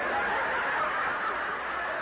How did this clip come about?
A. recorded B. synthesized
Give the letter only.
A